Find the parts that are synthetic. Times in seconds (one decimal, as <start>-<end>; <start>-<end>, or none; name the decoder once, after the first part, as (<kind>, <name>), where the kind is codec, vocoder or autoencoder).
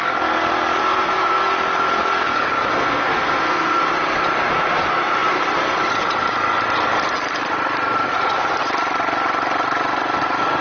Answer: 0.8-1.5 (codec, SNAC); 2.7-3.8